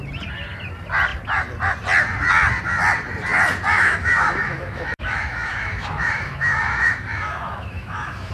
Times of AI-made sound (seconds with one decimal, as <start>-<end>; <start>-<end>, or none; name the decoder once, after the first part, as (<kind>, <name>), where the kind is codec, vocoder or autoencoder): 3.7-8.3 (autoencoder, DAC-VAE)